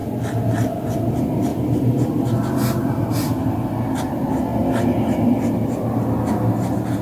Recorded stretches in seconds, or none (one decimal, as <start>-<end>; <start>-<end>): 0.0-1.5; 3.1-7.0

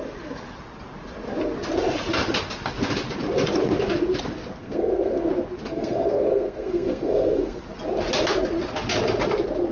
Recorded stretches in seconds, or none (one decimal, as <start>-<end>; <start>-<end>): 0.0-4.6; 5.3-5.7; 7.6-9.7

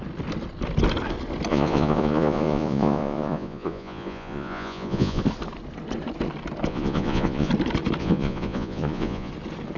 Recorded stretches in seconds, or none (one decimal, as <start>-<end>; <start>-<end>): 0.0-1.5; 5.2-6.7; 7.5-8.0; 9.3-9.8

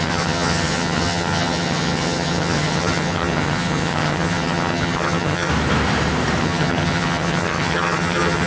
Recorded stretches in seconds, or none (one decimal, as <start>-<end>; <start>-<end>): 5.5-6.4

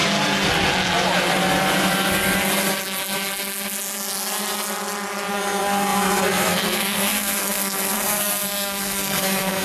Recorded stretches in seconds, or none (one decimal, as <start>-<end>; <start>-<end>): 0.0-5.3

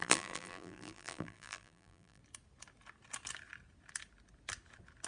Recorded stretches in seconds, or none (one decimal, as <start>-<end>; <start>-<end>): 2.2-5.1

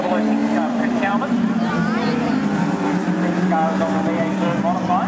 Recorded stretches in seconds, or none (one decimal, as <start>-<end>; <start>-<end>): 0.0-0.4; 3.4-5.1

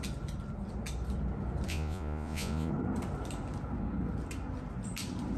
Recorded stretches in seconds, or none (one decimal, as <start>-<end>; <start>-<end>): 0.0-1.7; 2.7-5.4